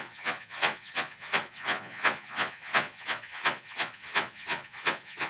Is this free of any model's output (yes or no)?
no